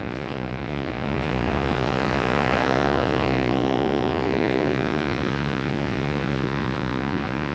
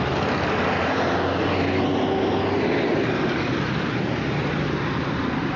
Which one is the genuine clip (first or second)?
second